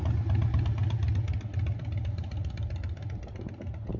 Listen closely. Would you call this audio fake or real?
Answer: real